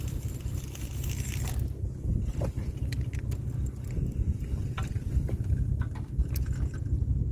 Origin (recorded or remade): recorded